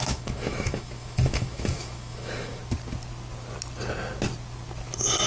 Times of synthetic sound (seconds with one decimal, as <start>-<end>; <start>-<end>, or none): 0.0-2.6

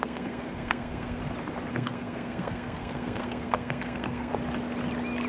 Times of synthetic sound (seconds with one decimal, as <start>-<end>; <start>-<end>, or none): 0.0-1.2; 1.7-4.3

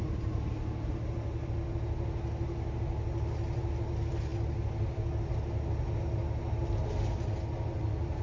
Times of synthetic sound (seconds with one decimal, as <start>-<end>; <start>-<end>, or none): none

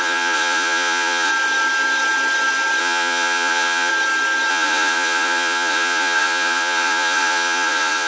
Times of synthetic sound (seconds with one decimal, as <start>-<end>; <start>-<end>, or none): 0.0-1.3; 2.8-3.9; 4.5-8.1

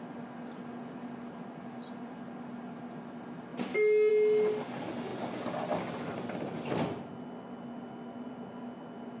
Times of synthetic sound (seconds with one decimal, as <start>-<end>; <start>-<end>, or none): none

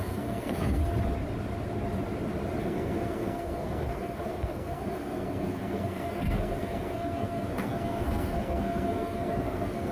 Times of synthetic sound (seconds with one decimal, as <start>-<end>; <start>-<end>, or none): 0.0-0.8; 2.6-9.9

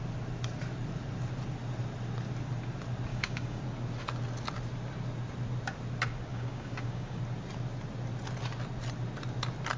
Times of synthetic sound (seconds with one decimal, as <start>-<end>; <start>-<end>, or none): 3.1-3.6; 6.3-7.2

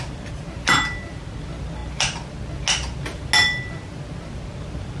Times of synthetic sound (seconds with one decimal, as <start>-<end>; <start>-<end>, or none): none